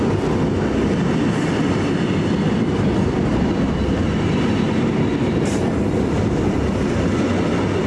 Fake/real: real